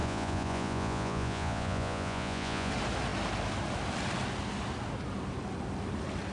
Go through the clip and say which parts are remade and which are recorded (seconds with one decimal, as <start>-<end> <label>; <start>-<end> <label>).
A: 0.0-2.7 remade; 2.7-6.3 recorded